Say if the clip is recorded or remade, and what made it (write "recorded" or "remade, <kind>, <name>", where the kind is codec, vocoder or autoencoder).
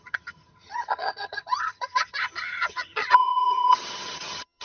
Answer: remade, vocoder, HiFi-GAN